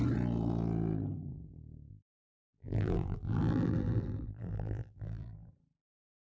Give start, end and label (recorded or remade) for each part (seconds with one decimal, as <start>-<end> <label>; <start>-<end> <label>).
0.0-1.9 recorded; 1.9-5.5 remade; 5.5-6.2 recorded